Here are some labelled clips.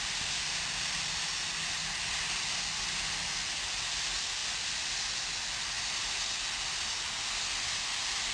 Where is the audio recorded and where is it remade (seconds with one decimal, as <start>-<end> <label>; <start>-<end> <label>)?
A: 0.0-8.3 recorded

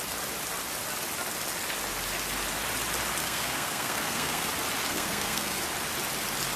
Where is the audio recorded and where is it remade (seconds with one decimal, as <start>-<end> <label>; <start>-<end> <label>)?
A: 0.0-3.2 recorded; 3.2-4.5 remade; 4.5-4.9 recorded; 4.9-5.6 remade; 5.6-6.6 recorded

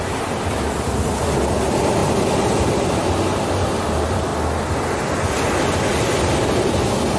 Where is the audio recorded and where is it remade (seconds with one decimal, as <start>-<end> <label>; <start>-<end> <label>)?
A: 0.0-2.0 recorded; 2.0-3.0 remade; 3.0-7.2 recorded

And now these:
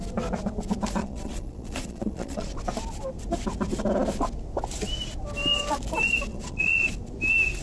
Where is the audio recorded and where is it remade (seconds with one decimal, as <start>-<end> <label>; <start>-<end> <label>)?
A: 0.0-1.0 recorded; 1.0-2.5 remade; 2.5-6.3 recorded; 6.3-6.9 remade; 6.9-7.6 recorded

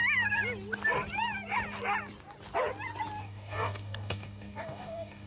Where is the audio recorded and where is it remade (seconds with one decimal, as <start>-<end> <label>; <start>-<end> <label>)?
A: 0.0-3.2 recorded; 3.2-5.3 remade

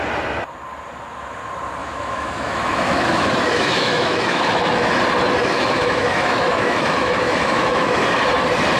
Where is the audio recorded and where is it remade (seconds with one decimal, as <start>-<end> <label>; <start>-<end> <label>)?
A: 0.0-1.8 recorded; 1.8-4.9 remade; 4.9-5.4 recorded; 5.4-8.0 remade; 8.0-8.8 recorded

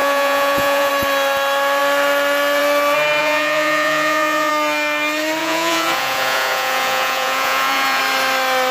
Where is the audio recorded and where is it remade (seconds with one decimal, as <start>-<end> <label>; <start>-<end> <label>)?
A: 0.0-0.9 remade; 0.9-3.2 recorded; 3.2-4.5 remade; 4.5-5.4 recorded; 5.4-8.0 remade; 8.0-8.7 recorded